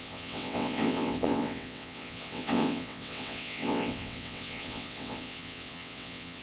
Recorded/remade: remade